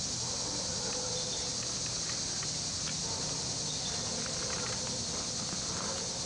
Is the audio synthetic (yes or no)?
no